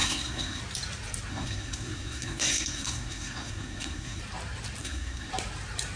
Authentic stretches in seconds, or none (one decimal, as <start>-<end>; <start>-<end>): 0.6-1.3; 4.2-4.8; 5.3-6.0